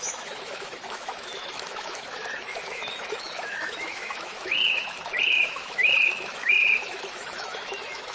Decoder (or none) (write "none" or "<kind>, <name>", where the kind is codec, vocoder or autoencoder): autoencoder, DAC-VAE